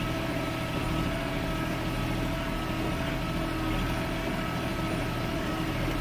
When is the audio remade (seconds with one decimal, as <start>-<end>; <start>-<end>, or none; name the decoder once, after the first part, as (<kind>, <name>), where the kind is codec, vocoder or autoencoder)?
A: 4.7-5.5 (vocoder, BigVGAN v2)